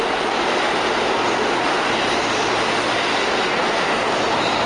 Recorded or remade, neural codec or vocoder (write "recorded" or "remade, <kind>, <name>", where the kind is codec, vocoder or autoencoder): recorded